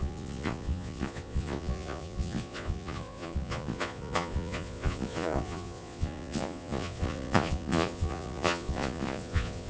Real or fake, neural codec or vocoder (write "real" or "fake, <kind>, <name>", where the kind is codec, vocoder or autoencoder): fake, vocoder, Vocos